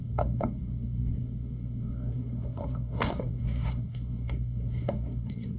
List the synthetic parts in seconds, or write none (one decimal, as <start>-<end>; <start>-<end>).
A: 0.0-5.6